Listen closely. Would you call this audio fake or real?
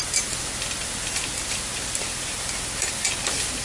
real